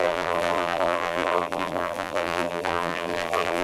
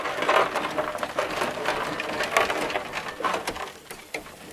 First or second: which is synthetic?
first